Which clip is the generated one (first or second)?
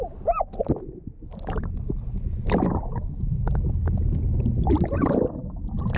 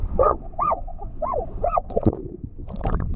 second